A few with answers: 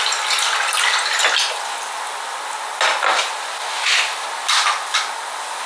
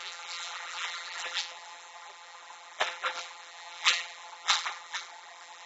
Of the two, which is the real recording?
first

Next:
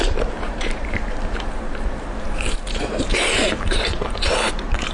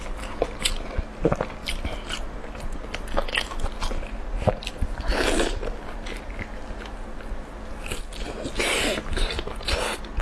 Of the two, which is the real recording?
second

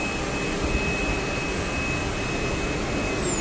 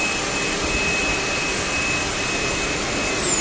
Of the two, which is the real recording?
first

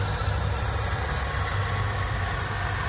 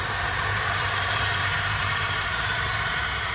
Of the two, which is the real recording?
first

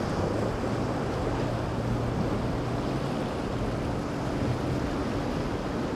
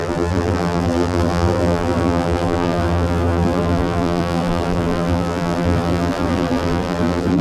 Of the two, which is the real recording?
first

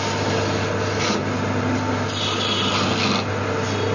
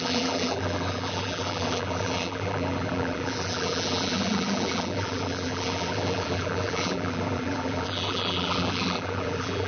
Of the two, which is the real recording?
first